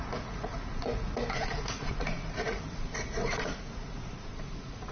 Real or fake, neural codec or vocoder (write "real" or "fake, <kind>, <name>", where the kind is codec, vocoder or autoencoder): fake, vocoder, Vocos